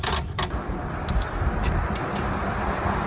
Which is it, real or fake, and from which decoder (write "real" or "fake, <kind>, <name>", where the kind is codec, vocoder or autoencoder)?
real